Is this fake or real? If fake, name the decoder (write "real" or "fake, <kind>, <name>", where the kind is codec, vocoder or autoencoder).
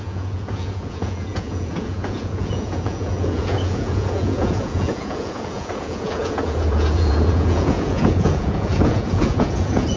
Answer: fake, vocoder, Vocos